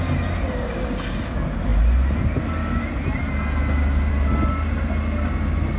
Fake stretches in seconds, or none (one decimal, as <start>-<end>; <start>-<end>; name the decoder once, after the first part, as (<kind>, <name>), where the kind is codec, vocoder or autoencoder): none